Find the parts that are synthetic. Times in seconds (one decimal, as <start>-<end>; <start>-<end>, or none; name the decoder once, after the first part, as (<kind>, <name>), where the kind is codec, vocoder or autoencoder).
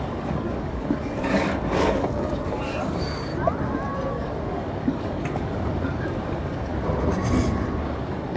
0.0-3.3 (codec, DAC); 4.1-6.7; 7.8-8.4